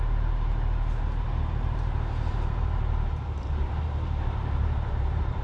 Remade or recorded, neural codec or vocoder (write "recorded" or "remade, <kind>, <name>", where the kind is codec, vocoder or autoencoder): remade, vocoder, BigVGAN v2